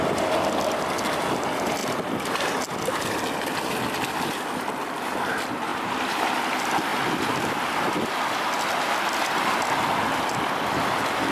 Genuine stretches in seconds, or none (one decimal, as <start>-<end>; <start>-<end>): 0.0-5.7; 6.4-11.3